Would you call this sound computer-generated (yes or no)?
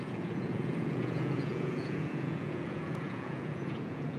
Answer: yes